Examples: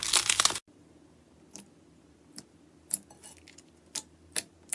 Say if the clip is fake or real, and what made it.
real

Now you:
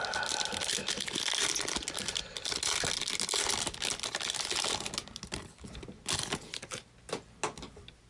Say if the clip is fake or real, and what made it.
real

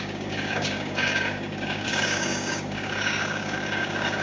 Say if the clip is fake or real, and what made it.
fake, codec, DAC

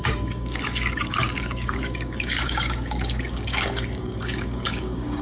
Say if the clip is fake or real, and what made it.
fake, codec, DAC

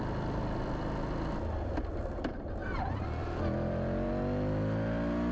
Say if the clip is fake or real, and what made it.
real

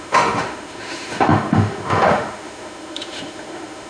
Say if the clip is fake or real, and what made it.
fake, autoencoder, DAC-VAE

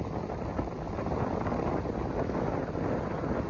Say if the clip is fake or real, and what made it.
real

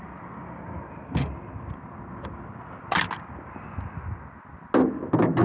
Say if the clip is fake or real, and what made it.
real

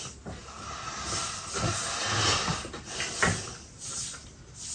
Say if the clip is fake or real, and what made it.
real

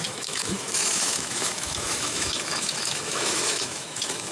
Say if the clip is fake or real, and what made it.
fake, autoencoder, DAC-VAE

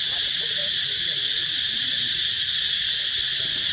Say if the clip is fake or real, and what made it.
fake, vocoder, Vocos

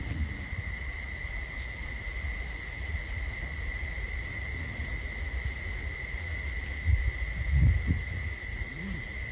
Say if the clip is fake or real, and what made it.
fake, vocoder, Vocos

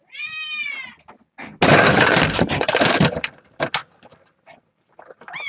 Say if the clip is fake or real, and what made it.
real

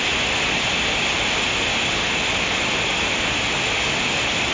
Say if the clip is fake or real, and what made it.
real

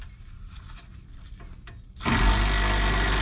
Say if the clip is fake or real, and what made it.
real